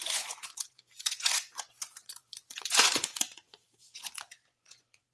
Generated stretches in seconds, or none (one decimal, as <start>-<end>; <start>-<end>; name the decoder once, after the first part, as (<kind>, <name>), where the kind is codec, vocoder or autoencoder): 0.0-5.1 (vocoder, Vocos)